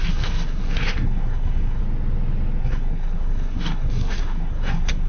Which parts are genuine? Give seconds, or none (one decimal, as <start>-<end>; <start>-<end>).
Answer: 1.8-2.6